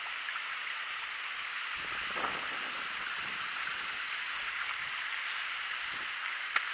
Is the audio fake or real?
real